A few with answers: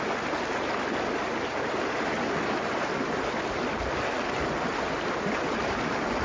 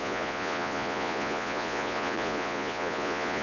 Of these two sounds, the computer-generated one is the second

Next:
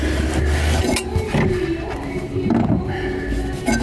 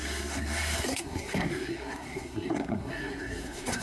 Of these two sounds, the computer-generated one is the second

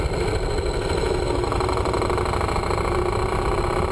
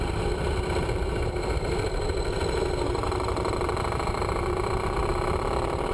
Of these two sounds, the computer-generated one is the second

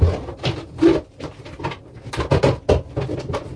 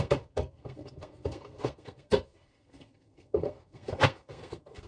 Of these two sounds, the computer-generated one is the second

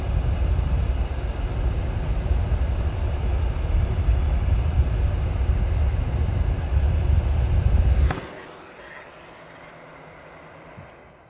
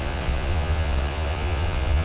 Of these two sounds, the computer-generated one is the second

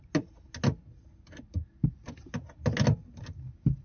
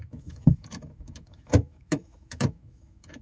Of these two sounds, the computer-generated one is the second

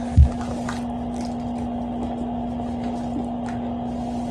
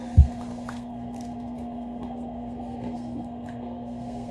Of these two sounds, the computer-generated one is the second